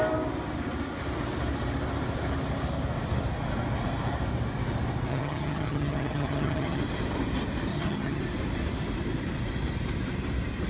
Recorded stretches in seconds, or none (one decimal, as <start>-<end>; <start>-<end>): 0.0-5.1; 6.8-7.7; 8.2-10.7